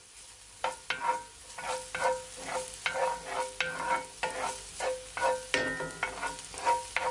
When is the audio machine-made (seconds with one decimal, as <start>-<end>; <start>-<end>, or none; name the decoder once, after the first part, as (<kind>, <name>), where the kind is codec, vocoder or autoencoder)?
none